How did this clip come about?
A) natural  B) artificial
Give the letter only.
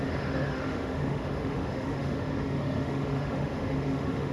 B